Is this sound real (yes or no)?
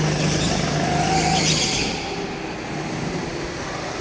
yes